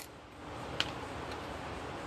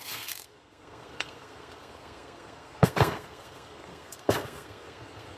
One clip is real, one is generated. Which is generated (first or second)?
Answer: second